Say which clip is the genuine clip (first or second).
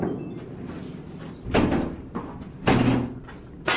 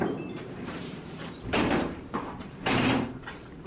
first